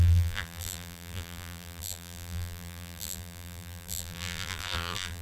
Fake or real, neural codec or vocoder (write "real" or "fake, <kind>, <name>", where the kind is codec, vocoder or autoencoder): fake, vocoder, BigVGAN v2